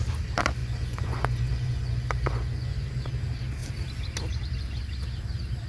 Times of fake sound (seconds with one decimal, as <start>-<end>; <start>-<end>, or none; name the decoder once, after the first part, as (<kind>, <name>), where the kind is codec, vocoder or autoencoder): 0.6-3.1 (vocoder, Vocos)